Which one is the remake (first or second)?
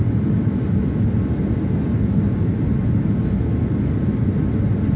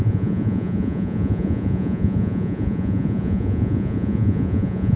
second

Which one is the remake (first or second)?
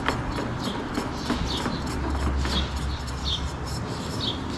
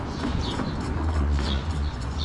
second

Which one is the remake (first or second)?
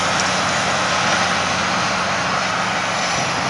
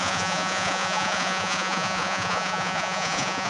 second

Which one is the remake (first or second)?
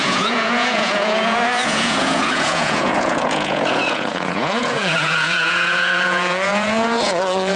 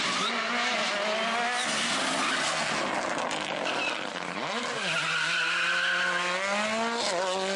first